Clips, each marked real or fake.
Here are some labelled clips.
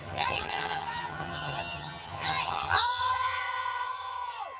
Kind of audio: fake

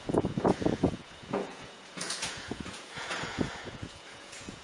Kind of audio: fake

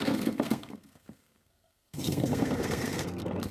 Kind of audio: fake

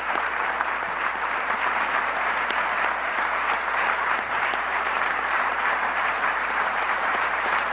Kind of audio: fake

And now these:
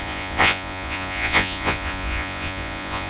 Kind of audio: fake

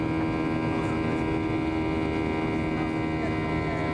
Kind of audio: real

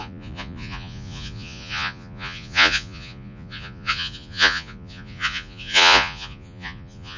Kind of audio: fake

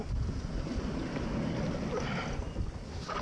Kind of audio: real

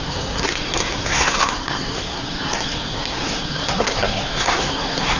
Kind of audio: fake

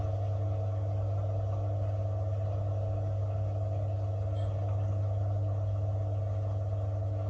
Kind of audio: real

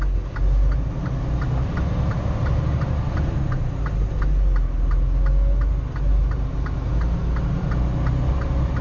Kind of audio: real